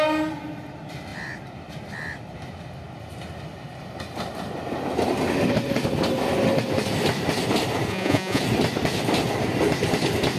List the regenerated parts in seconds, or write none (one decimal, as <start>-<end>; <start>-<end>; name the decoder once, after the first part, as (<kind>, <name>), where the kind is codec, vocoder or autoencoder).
7.9-8.4 (vocoder, Vocos)

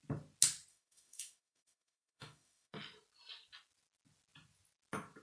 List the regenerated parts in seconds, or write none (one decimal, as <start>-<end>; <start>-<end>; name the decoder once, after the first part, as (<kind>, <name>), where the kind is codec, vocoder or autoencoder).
0.7-2.7 (autoencoder, DAC-VAE)

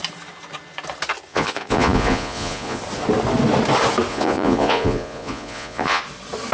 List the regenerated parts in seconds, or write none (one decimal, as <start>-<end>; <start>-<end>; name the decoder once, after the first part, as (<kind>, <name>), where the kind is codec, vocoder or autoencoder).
1.3-2.8 (vocoder, Vocos); 4.1-6.0

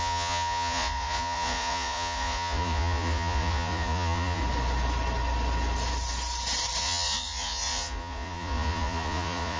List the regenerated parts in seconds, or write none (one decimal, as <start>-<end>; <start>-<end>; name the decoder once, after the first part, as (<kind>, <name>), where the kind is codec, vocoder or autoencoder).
0.0-4.4 (vocoder, Vocos); 6.8-9.6

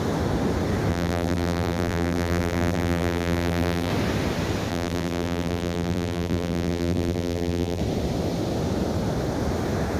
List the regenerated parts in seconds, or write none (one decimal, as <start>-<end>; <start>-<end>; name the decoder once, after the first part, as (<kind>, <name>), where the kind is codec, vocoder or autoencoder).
0.9-3.9 (vocoder, BigVGAN v2); 4.7-7.8

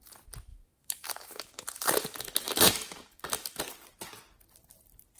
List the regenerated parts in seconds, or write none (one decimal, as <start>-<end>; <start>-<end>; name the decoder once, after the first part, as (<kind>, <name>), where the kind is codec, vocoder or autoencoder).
0.5-3.6 (autoencoder, DAC-VAE)

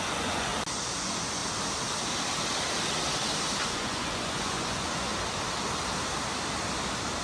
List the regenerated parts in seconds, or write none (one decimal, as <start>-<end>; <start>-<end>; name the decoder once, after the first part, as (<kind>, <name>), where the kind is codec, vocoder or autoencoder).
0.0-0.5 (vocoder, Vocos); 1.0-1.4; 3.7-5.1

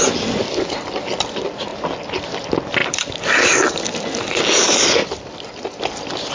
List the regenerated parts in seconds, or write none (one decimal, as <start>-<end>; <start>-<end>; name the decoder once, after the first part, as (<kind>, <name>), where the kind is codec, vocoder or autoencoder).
2.8-4.4 (vocoder, BigVGAN v2); 5.0-5.8